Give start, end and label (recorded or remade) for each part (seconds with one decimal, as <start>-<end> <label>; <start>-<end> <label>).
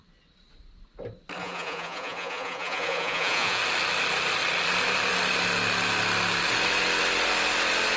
0.0-1.4 recorded; 1.4-3.6 remade; 3.6-8.0 recorded